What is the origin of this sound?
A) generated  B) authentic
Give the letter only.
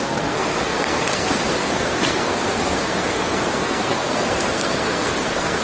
A